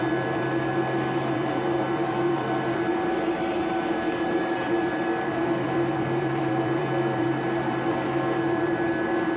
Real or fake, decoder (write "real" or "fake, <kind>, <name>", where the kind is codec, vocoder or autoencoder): fake, vocoder, BigVGAN v2